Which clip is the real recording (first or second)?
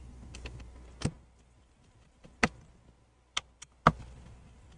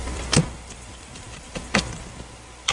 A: first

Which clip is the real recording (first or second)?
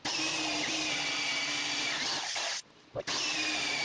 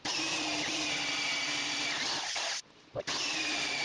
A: first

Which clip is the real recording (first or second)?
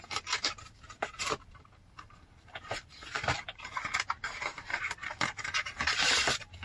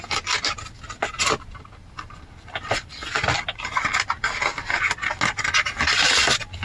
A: second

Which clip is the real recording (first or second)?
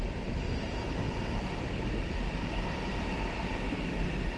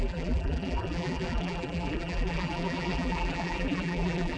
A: first